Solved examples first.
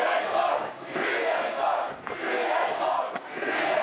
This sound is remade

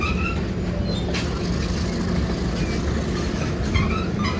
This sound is recorded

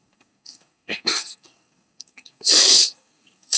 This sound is remade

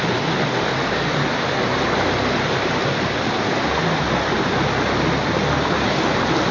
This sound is recorded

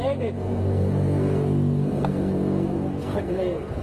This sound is remade